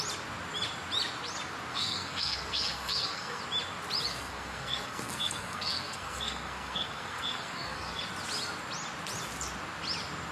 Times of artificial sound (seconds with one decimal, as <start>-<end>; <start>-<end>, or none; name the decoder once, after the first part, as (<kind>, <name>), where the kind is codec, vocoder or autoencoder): 1.7-3.4 (codec, SNAC); 4.1-8.0